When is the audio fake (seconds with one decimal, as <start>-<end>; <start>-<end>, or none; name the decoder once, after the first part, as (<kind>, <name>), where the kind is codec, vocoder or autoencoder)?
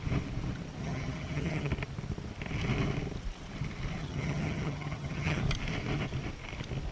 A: 0.8-1.7 (vocoder, HiFi-GAN); 4.0-5.4